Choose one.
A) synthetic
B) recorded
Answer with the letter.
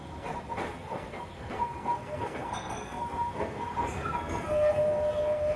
A